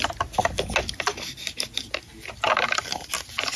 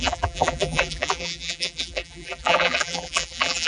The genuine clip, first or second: first